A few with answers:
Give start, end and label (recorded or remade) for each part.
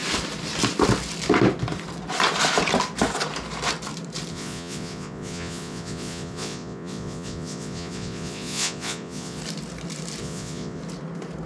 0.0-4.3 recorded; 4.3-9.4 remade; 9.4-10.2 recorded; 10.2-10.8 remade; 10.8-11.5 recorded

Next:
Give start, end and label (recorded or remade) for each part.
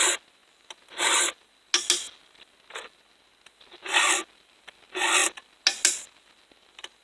0.0-7.0 recorded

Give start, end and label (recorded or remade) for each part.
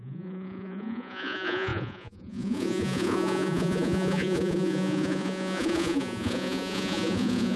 0.0-7.6 remade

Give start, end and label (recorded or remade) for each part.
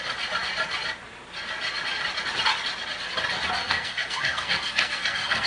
0.0-3.6 recorded; 3.6-5.5 remade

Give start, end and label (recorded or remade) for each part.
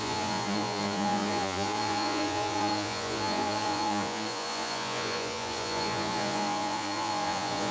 0.0-7.7 remade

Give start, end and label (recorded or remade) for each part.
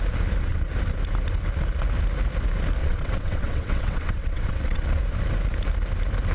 0.0-2.8 recorded; 2.8-5.0 remade; 5.0-6.3 recorded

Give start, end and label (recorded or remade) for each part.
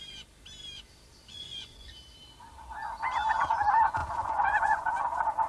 0.0-1.3 recorded; 1.3-1.9 remade; 1.9-4.0 recorded; 4.0-4.9 remade; 4.9-5.5 recorded